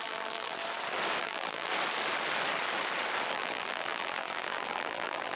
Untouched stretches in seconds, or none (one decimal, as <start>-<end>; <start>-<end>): 0.6-1.2; 1.7-3.3